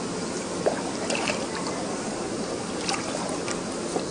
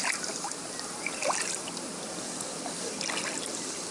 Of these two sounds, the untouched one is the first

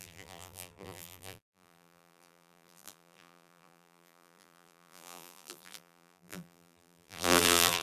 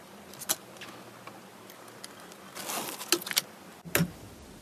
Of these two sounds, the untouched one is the second